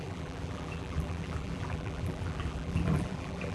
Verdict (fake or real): fake